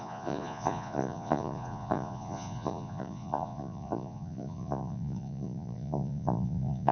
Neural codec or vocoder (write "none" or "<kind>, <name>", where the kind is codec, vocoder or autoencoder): vocoder, Vocos